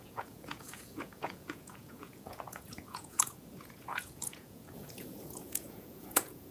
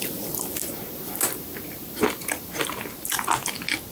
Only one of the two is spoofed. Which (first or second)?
first